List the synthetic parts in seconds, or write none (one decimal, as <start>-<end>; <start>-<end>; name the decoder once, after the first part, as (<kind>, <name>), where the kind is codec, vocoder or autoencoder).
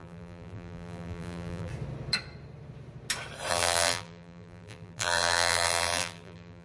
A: 0.0-1.7 (vocoder, BigVGAN v2); 3.5-6.6